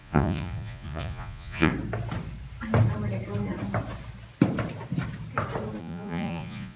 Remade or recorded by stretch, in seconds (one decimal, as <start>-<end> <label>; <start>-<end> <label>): 0.0-1.7 remade; 1.7-5.8 recorded; 5.8-6.8 remade